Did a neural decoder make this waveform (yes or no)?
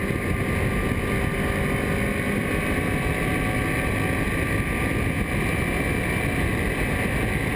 no